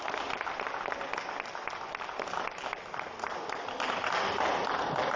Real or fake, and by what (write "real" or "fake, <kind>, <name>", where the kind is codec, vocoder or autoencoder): real